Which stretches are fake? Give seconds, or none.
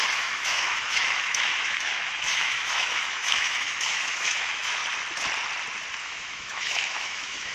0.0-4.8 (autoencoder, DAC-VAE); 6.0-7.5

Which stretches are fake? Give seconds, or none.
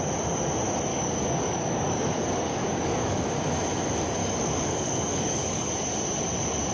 0.9-3.2 (codec, DAC); 4.2-5.7